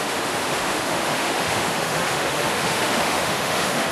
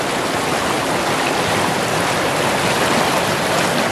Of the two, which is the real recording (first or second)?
second